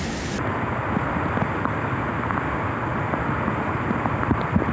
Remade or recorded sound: recorded